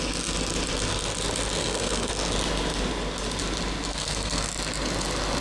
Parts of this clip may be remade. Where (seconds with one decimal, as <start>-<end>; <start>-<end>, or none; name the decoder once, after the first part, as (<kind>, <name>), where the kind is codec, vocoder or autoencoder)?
1.6-2.1 (codec, SNAC); 3.9-4.5

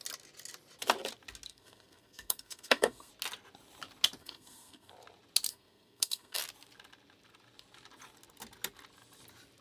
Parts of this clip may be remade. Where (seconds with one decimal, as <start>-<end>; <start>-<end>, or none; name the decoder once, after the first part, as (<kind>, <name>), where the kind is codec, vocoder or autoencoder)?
1.5-3.1 (codec, SNAC); 4.2-4.9; 5.5-6.4